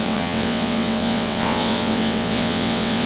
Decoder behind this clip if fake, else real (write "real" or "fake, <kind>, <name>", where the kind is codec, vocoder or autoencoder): fake, vocoder, WaveNeXt